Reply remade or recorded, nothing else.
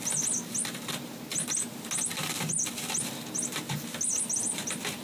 recorded